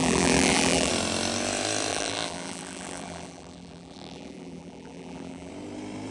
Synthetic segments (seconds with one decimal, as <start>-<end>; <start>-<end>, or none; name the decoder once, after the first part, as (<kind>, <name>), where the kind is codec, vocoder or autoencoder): 0.0-0.9 (vocoder, BigVGAN v2); 1.9-5.5